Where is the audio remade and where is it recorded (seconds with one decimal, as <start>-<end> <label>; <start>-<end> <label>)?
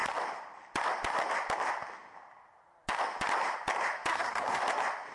0.0-4.1 recorded; 4.1-4.6 remade; 4.6-5.1 recorded